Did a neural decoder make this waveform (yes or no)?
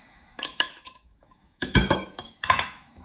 yes